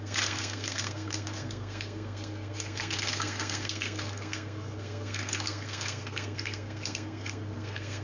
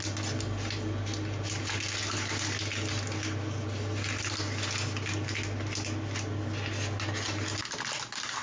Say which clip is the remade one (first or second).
first